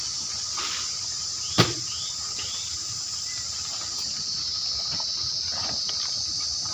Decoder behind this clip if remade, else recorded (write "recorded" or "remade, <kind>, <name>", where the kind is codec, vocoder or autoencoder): recorded